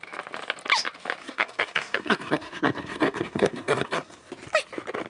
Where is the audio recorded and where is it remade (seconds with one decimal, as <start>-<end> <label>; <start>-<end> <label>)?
0.0-1.2 recorded; 1.2-4.3 remade; 4.3-5.1 recorded